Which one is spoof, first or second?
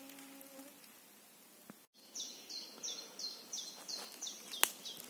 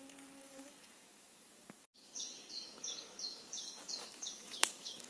second